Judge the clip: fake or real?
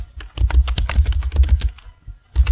real